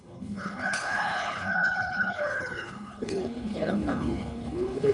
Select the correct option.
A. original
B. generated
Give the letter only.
B